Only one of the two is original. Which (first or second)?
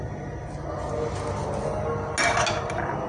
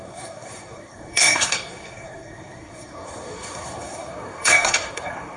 first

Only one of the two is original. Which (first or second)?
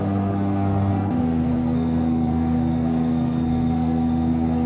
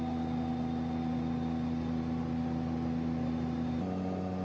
second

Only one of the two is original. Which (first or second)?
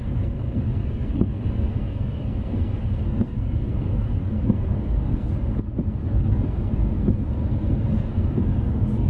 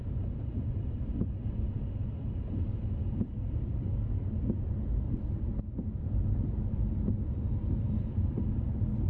second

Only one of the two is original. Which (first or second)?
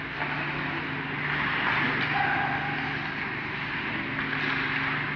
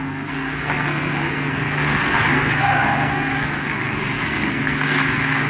first